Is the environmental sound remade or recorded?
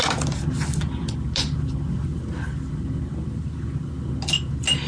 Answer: recorded